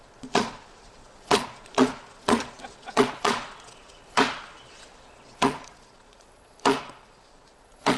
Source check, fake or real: fake